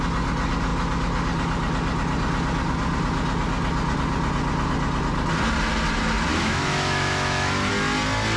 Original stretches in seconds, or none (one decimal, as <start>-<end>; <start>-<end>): 0.0-6.3; 7.7-8.4